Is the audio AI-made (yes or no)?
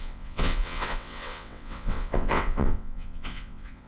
yes